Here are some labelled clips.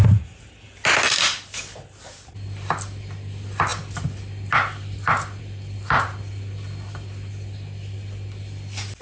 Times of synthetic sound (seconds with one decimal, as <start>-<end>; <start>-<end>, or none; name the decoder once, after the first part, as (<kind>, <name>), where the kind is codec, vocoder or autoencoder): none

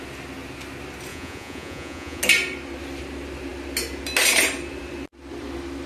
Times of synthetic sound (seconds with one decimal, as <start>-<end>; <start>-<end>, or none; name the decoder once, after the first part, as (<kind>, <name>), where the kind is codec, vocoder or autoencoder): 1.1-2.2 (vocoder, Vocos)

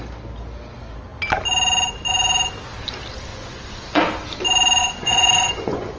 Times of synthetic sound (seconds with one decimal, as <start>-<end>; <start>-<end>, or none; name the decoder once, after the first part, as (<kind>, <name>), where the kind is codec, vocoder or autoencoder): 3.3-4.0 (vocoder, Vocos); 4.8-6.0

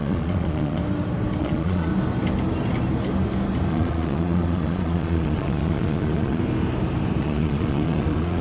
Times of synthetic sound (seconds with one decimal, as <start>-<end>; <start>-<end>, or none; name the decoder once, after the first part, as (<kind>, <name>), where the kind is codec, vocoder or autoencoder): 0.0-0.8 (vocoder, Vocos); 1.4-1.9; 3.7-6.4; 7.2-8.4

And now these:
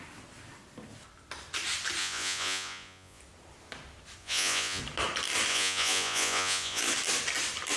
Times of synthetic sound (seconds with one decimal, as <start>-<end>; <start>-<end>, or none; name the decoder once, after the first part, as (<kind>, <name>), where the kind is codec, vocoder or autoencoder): 2.0-3.2 (vocoder, Vocos); 4.2-4.8; 5.5-6.8